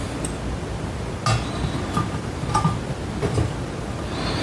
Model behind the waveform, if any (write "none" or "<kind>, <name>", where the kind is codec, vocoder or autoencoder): none